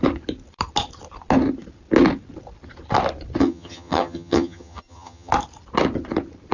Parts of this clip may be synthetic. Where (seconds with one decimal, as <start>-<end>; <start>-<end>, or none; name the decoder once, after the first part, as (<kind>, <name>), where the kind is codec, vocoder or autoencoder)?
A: 3.4-5.3 (vocoder, HiFi-GAN)